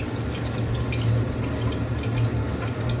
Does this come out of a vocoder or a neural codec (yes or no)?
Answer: no